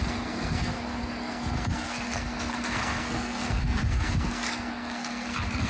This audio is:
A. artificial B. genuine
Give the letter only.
A